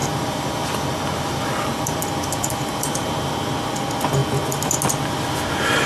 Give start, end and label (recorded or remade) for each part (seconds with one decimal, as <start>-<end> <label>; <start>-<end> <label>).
0.0-3.5 remade; 3.5-5.9 recorded